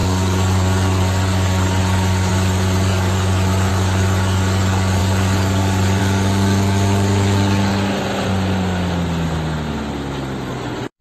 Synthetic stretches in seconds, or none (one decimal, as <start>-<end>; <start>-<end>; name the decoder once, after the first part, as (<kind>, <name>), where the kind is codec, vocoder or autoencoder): 0.0-7.7 (codec, DAC); 10.5-11.0